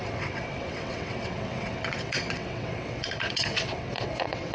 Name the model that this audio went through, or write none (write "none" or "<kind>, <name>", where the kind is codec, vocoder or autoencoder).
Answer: vocoder, WaveNeXt